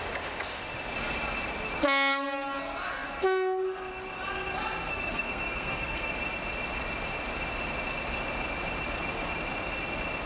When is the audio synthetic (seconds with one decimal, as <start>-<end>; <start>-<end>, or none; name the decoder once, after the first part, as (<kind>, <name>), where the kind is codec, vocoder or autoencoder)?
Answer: 4.9-6.1 (codec, SNAC)